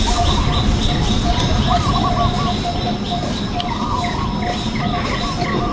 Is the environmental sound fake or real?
real